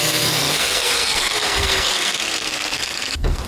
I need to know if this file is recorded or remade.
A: remade